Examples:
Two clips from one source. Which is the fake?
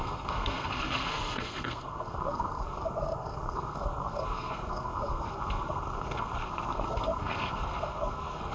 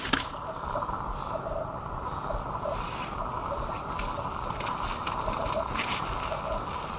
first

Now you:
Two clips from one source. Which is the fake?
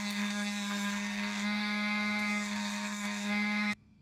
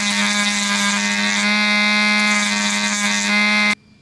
first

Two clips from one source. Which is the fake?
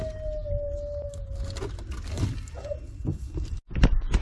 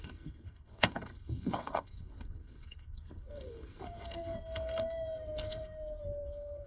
second